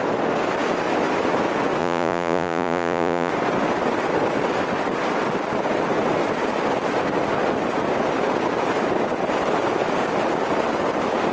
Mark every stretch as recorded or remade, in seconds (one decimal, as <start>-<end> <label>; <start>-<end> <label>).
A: 0.0-1.8 recorded; 1.8-3.3 remade; 3.3-11.3 recorded